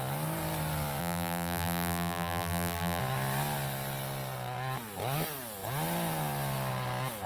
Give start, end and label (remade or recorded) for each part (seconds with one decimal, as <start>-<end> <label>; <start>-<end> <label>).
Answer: 0.0-1.0 recorded; 1.0-3.0 remade; 3.0-7.3 recorded

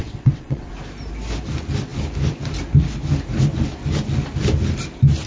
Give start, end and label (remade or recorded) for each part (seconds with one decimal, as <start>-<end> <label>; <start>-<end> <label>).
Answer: 0.0-0.7 remade; 0.7-5.3 recorded

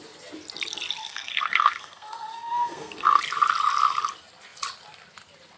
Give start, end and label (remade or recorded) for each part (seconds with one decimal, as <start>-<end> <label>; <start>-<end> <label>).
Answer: 0.0-1.0 recorded; 1.0-3.2 remade; 3.2-5.6 recorded

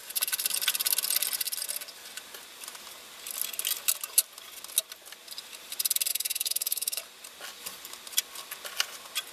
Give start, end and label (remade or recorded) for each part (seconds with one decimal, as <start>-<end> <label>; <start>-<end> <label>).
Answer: 0.0-6.1 recorded; 6.1-7.0 remade; 7.0-9.3 recorded

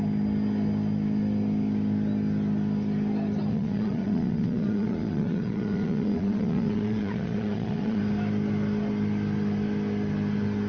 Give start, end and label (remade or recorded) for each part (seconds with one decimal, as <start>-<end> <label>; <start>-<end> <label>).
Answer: 0.0-3.5 recorded; 3.5-8.0 remade; 8.0-10.7 recorded